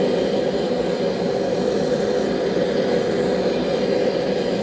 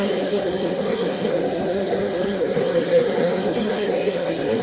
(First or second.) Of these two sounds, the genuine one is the first